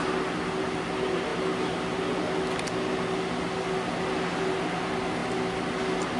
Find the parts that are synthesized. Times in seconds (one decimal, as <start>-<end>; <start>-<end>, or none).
none